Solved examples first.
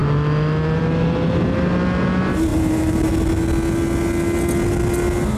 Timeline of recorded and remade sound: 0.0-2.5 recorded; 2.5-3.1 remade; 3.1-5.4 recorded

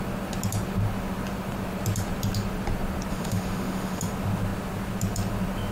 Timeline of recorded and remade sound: 0.0-3.1 recorded; 3.1-4.0 remade; 4.0-5.7 recorded

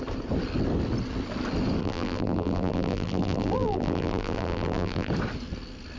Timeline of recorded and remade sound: 0.0-1.8 recorded; 1.8-5.1 remade; 5.1-6.0 recorded

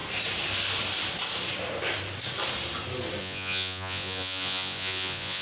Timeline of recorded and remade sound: 0.0-3.2 recorded; 3.2-5.4 remade

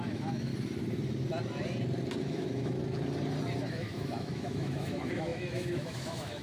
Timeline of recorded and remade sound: 0.0-0.5 remade; 0.5-2.2 recorded; 2.2-2.8 remade; 2.8-3.7 recorded; 3.7-6.4 remade

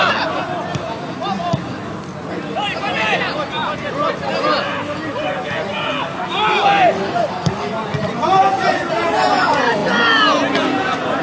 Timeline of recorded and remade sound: 0.0-11.2 recorded

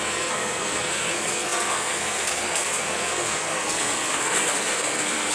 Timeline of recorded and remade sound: 0.0-5.3 remade

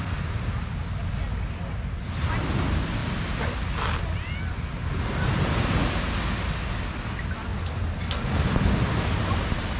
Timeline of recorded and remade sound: 0.0-9.8 recorded